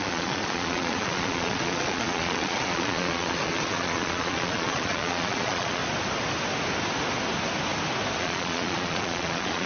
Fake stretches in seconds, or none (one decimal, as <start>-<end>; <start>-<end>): 0.0-5.8; 8.2-9.7

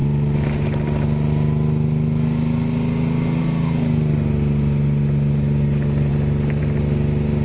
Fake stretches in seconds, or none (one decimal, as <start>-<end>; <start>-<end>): none

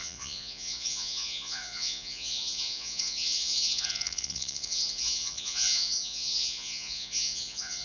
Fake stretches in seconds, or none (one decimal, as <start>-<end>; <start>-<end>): 0.0-7.8

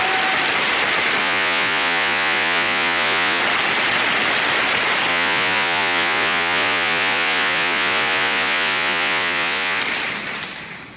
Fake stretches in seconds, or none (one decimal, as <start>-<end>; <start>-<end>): 1.2-3.4; 5.1-9.8

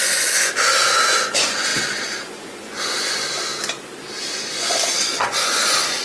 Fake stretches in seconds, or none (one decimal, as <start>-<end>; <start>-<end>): 0.0-3.5; 4.5-6.0